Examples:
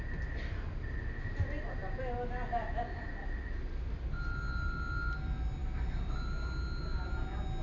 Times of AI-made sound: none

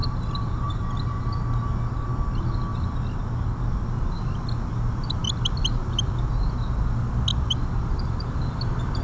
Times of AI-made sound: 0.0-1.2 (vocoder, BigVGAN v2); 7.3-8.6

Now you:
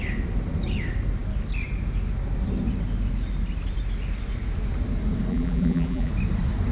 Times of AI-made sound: 5.3-6.1 (vocoder, BigVGAN v2)

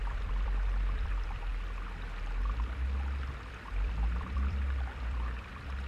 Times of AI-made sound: 0.0-1.5 (vocoder, BigVGAN v2); 3.4-5.9

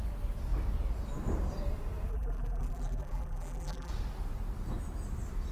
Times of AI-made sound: 2.1-3.9 (vocoder, BigVGAN v2)